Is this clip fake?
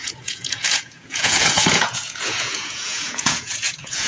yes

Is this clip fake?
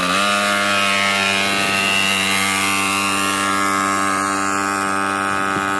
no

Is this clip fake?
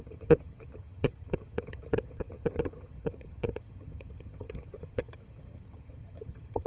yes